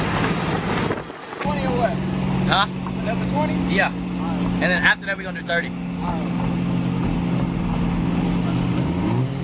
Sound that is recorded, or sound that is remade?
recorded